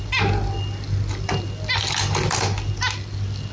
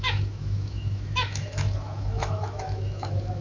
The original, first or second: first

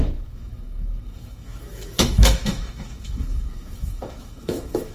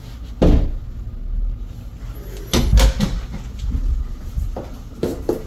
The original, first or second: second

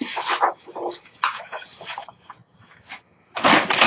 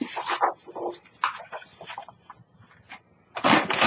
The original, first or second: second